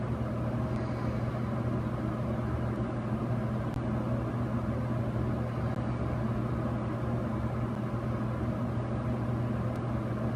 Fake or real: real